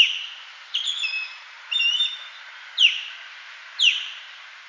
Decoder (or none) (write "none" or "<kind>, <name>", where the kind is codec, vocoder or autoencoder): none